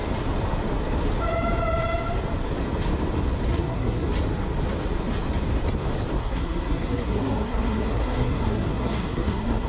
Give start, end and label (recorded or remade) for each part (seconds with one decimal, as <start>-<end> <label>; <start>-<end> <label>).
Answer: 0.0-3.5 recorded; 3.5-4.1 remade; 4.1-6.2 recorded; 6.2-9.7 remade